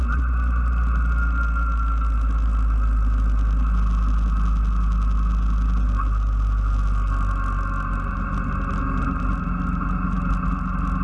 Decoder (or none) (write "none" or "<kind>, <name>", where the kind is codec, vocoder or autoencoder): none